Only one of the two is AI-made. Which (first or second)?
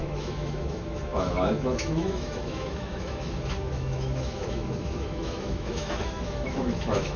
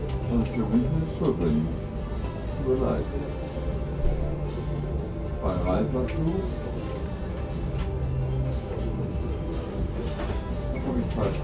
first